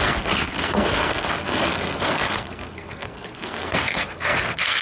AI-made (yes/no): yes